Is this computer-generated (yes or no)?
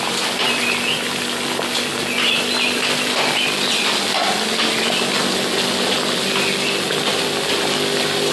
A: no